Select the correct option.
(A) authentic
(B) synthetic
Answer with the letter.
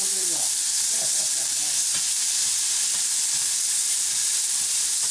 A